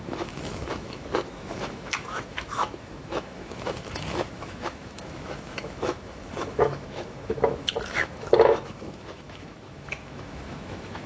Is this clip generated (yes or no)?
yes